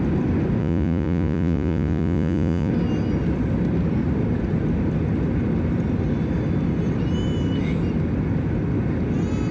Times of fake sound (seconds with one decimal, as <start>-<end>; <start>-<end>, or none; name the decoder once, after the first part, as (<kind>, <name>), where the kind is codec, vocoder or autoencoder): 0.6-2.7 (vocoder, Vocos)